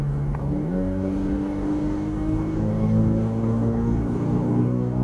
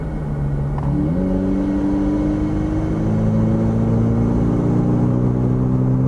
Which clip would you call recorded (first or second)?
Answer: second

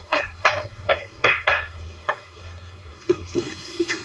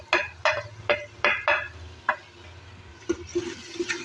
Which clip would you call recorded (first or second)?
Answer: second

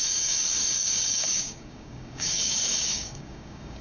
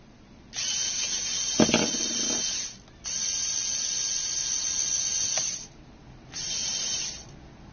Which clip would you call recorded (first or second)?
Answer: second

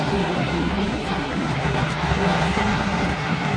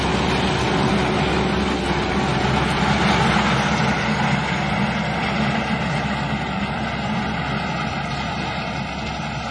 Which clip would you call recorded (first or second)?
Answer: second